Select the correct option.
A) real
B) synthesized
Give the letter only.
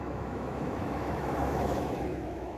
B